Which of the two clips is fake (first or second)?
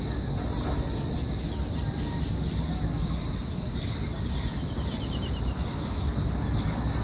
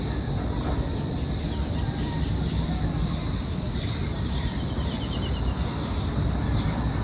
second